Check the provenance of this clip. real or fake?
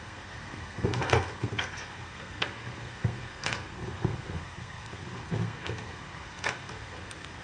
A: fake